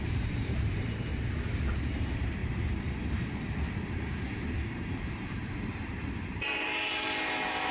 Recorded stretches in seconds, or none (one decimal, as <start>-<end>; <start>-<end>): 1.1-1.9; 2.4-3.9